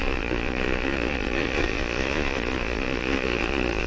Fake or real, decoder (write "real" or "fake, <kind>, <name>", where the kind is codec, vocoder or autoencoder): fake, vocoder, Vocos